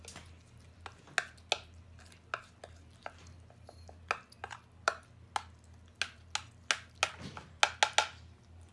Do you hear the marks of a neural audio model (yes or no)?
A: no